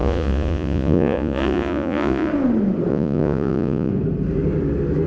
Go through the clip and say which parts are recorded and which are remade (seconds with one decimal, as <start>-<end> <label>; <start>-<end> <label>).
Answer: 0.0-2.3 remade; 2.3-2.9 recorded; 2.9-3.9 remade; 3.9-5.1 recorded